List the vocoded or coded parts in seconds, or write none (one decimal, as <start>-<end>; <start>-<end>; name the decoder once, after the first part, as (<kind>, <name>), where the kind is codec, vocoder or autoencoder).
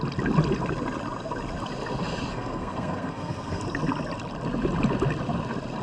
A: 2.3-3.6 (codec, SNAC)